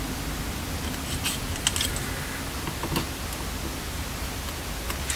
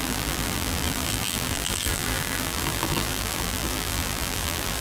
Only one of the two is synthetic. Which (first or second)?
second